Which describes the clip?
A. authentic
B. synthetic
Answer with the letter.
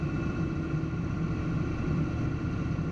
B